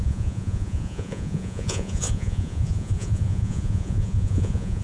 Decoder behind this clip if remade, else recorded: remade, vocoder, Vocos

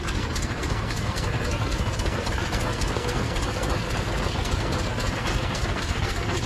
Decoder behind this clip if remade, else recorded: remade, codec, SNAC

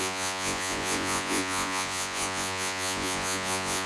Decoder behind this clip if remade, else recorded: remade, vocoder, Vocos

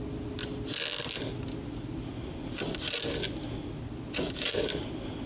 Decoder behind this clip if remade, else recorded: recorded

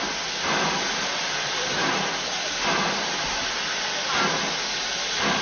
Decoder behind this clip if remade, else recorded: recorded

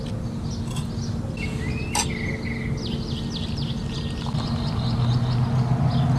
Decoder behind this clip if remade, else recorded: recorded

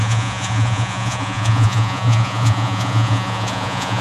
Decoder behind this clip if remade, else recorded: remade, vocoder, Vocos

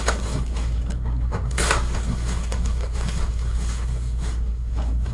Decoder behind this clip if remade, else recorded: remade, codec, SNAC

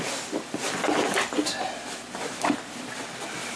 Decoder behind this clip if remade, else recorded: recorded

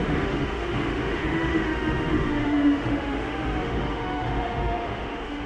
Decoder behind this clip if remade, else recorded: remade, autoencoder, DAC-VAE